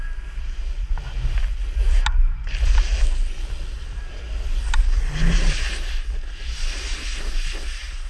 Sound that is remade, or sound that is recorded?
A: recorded